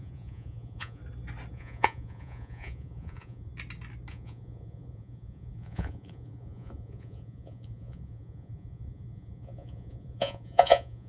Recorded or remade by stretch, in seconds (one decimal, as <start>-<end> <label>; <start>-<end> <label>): 0.0-1.0 remade; 1.0-1.5 recorded; 1.5-3.5 remade; 3.5-4.1 recorded; 4.1-11.1 remade